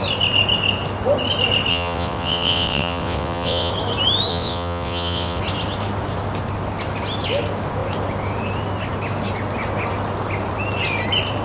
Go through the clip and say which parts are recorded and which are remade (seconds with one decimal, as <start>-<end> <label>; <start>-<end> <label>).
0.0-1.7 recorded; 1.7-3.7 remade; 3.7-4.3 recorded; 4.3-5.4 remade; 5.4-11.4 recorded

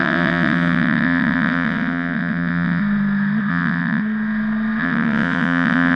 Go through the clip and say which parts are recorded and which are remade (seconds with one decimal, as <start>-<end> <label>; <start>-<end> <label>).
0.0-2.8 remade; 2.8-3.5 recorded; 3.5-4.0 remade; 4.0-4.8 recorded; 4.8-6.0 remade

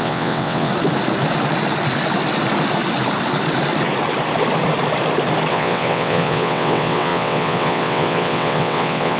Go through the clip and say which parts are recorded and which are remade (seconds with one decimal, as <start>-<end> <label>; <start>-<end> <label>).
0.0-0.7 remade; 0.7-5.5 recorded; 5.5-9.2 remade

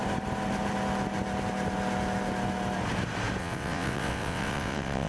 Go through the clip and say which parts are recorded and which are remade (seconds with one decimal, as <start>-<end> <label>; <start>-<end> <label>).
0.0-3.4 recorded; 3.4-5.1 remade

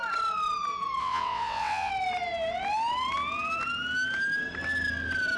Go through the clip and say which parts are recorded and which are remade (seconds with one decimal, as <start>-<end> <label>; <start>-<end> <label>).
0.0-1.0 recorded; 1.0-1.9 remade; 1.9-5.4 recorded

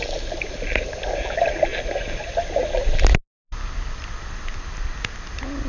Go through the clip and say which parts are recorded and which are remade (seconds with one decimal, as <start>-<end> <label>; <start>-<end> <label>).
0.0-5.7 recorded

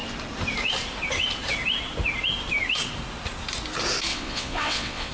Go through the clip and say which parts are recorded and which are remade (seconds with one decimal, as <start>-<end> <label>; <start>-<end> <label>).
0.0-4.1 recorded; 4.1-5.1 remade